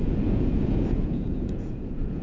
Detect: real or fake fake